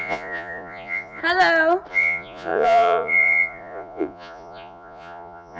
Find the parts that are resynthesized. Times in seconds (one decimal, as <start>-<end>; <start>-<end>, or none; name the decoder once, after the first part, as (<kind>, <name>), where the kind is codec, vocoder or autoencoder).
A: 0.0-1.2 (vocoder, Vocos); 1.9-5.6